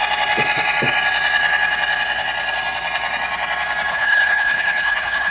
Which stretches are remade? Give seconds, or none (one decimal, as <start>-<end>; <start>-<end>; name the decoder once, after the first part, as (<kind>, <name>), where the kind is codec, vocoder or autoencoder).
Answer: 3.9-5.3 (codec, HILCodec)